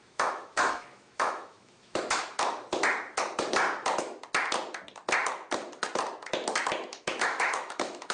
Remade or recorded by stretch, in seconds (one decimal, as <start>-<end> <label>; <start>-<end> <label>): 0.0-2.2 remade; 2.2-6.9 recorded; 6.9-8.1 remade

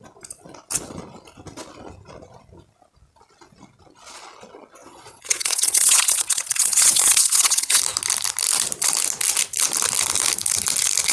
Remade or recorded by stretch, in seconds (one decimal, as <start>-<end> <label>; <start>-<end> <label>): 0.0-4.8 recorded; 4.8-7.8 remade; 7.8-11.1 recorded

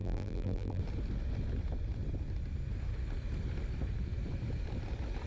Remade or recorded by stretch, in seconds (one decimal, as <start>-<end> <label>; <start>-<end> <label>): 0.0-0.8 remade; 0.8-5.3 recorded

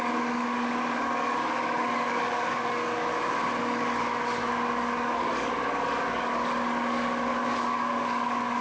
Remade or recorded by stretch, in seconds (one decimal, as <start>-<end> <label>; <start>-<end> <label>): 0.0-3.1 remade; 3.1-3.6 recorded; 3.6-8.6 remade

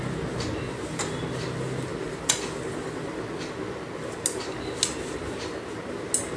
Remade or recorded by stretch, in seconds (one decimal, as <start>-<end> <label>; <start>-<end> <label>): 0.0-6.4 recorded